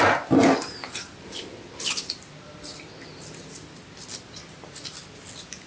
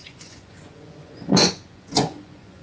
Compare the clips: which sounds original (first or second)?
first